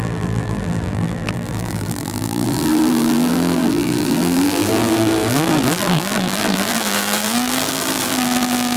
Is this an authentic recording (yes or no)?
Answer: no